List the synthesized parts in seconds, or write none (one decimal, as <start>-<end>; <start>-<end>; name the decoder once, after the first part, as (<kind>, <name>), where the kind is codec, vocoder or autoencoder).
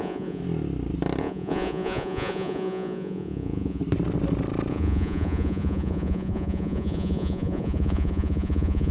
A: 0.0-0.4 (vocoder, Vocos); 1.2-3.8; 4.7-8.9